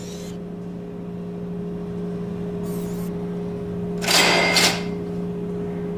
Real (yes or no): yes